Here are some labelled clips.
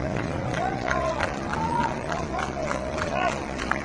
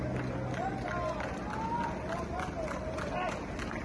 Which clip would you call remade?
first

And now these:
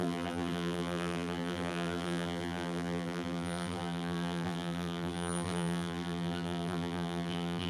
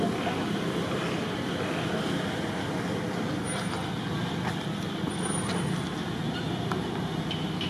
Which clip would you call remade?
first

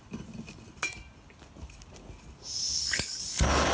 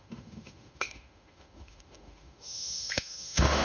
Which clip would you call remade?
second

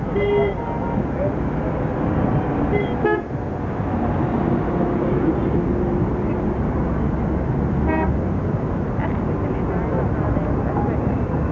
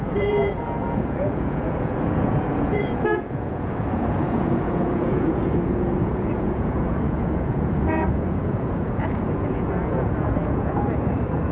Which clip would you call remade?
second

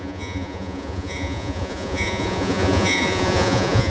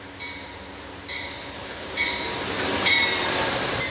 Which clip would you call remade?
first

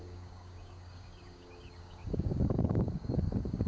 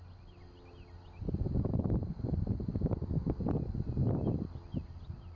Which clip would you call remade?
first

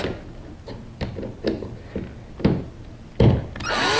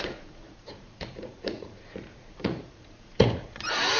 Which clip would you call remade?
second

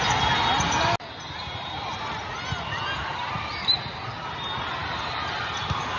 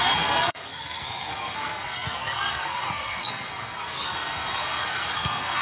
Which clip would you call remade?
second